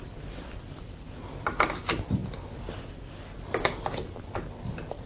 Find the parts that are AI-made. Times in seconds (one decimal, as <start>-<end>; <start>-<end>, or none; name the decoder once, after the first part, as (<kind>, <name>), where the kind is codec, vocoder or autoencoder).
none